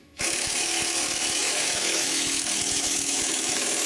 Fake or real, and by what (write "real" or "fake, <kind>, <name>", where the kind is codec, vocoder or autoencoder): fake, autoencoder, DAC-VAE